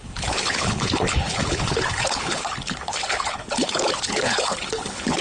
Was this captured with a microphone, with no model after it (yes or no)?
no